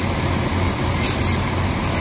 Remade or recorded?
recorded